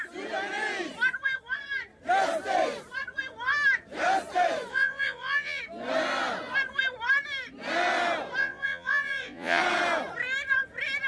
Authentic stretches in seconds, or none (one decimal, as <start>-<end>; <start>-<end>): 0.0-4.7; 5.6-8.4; 9.6-11.1